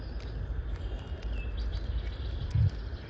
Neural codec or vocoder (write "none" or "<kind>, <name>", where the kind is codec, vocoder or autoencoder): none